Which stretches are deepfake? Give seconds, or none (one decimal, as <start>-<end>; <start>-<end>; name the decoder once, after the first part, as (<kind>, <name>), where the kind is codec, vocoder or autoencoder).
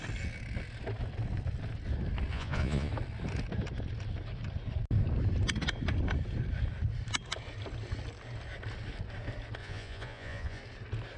2.3-2.9 (vocoder, Vocos); 9.6-10.6